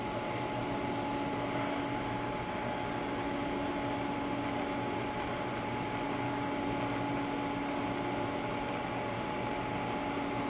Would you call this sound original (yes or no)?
yes